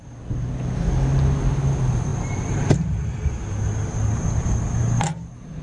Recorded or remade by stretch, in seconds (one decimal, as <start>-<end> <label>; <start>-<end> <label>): 0.0-5.6 recorded